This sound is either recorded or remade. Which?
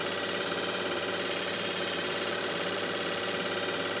remade